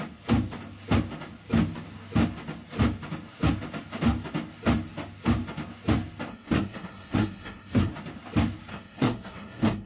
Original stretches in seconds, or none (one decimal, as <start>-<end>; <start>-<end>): 0.0-6.3; 7.9-8.7